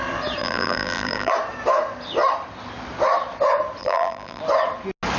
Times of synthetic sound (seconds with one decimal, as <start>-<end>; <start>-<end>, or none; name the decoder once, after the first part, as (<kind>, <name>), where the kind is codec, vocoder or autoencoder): 0.4-1.3 (vocoder, BigVGAN v2); 3.8-4.4